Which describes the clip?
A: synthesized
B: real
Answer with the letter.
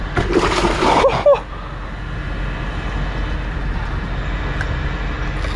B